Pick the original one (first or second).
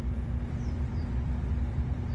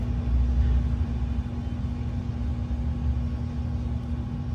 second